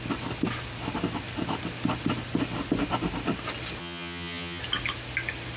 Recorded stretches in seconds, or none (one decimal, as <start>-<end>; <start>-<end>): 0.0-3.8; 4.6-5.6